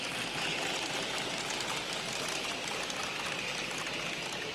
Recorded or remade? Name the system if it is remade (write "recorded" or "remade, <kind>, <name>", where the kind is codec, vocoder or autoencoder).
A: recorded